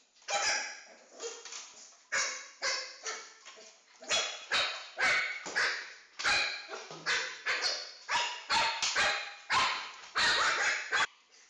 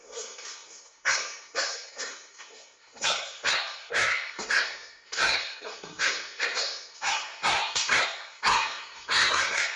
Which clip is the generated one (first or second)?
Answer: second